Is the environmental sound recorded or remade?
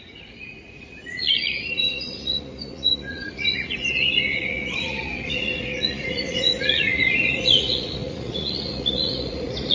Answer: remade